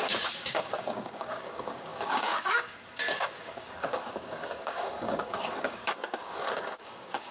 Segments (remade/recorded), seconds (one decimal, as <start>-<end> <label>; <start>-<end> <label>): 0.0-7.3 remade